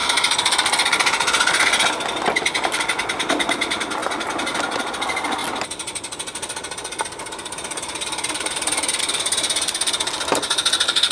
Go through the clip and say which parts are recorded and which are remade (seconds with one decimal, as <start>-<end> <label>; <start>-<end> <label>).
0.0-11.1 recorded